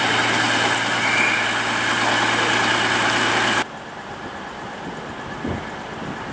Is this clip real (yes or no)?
yes